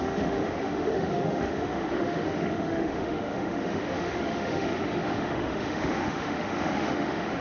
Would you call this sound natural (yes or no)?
no